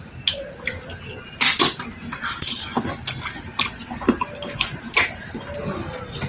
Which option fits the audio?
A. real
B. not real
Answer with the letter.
A